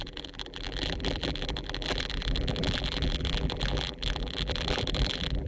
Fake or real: fake